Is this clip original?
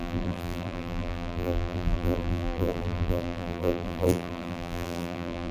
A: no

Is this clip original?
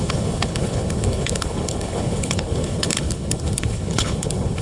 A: no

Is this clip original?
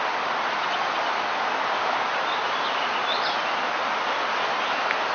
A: yes